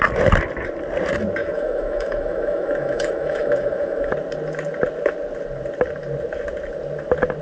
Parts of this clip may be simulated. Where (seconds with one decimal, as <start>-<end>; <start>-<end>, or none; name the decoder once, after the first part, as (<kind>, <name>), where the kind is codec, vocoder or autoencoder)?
1.4-4.1 (autoencoder, DAC-VAE)

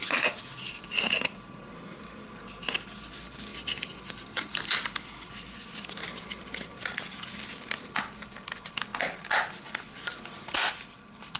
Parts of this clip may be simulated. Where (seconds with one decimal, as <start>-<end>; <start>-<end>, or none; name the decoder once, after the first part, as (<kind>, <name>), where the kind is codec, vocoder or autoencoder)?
none

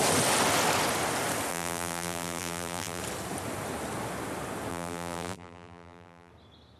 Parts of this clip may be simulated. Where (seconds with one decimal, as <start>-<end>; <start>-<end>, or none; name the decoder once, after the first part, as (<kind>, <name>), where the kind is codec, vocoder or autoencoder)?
1.5-3.0 (vocoder, BigVGAN v2); 4.7-6.3

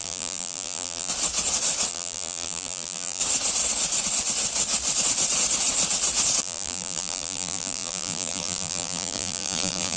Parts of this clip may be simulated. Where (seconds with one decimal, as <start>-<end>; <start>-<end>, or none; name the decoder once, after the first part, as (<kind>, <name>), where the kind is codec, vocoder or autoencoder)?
0.0-1.1 (vocoder, BigVGAN v2); 1.9-3.2; 6.4-10.0